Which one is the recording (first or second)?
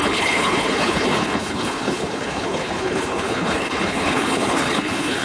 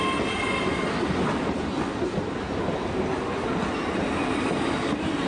second